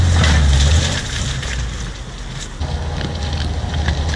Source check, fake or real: real